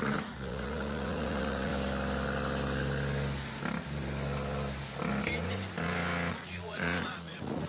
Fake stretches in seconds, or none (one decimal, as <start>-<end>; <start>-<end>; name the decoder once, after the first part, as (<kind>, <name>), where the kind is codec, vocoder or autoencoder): 0.0-1.7 (vocoder, Vocos); 6.3-7.7